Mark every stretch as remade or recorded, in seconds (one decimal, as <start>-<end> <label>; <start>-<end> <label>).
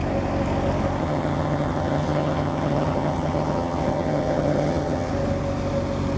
0.0-1.0 recorded; 1.0-5.1 remade; 5.1-6.2 recorded